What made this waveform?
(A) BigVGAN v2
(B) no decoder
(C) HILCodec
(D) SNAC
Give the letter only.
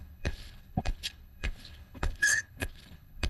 C